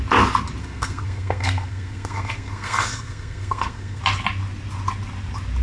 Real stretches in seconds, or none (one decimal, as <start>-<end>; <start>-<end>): 0.0-0.6; 4.0-5.6